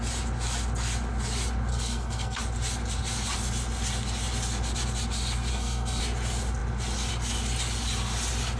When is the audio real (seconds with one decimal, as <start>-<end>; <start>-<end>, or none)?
0.0-1.7; 2.4-5.5; 6.0-8.6